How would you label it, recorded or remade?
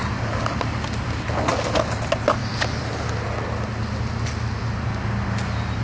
recorded